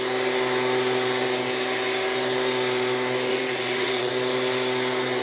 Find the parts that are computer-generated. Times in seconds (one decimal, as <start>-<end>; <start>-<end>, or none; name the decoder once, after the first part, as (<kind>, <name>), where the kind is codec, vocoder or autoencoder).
3.3-4.1 (vocoder, WaveNeXt)